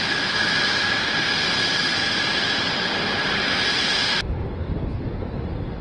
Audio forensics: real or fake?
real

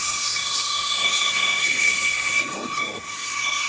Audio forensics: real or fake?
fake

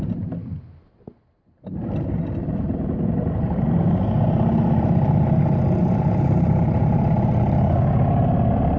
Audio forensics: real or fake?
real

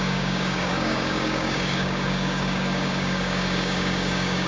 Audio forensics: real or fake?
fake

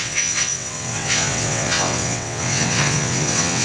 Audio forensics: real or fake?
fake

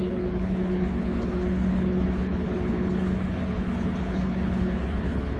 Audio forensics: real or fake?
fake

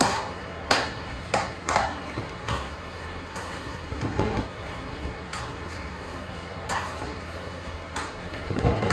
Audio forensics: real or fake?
fake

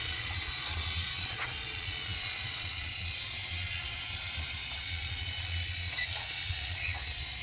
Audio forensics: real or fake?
fake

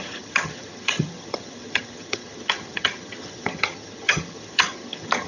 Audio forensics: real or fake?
fake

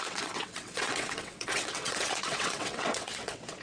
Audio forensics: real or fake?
fake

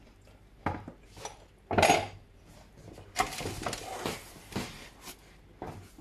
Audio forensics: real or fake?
real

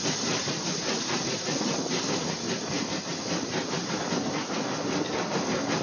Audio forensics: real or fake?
real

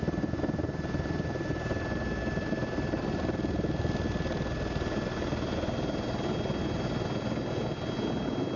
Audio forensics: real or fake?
real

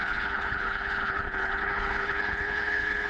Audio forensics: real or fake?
fake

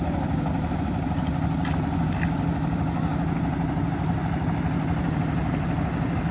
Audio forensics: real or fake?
real